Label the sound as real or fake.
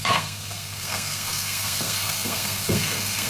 fake